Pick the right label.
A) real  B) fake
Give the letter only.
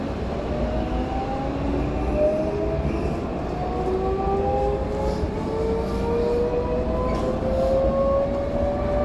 A